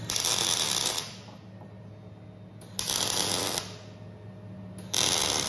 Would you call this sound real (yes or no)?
yes